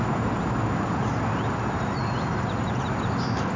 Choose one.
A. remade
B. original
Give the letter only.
B